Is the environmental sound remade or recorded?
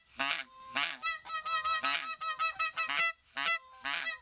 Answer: recorded